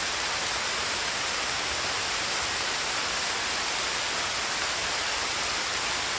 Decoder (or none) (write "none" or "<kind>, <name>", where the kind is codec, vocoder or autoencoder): none